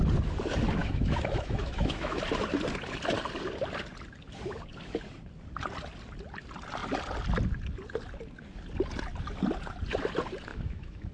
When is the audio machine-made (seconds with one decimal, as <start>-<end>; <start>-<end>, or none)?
0.8-2.2; 10.5-11.1